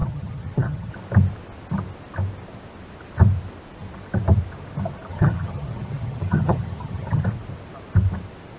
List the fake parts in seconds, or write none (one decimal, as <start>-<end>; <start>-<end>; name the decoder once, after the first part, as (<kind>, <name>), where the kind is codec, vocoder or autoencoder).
0.0-0.9 (vocoder, HiFi-GAN); 5.1-7.2